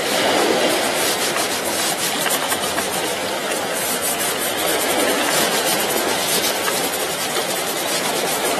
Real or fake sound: real